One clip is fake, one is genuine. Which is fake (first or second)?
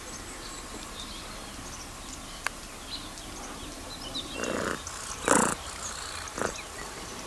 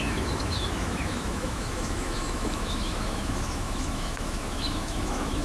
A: second